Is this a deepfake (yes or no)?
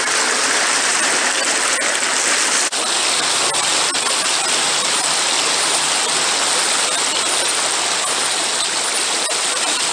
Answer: no